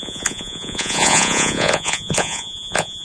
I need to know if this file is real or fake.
fake